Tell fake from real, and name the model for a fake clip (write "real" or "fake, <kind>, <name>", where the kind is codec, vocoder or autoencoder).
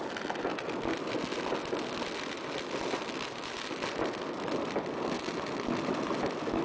real